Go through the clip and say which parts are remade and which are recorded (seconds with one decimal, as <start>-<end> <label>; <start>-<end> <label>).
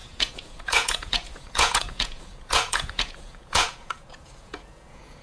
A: 0.0-5.2 remade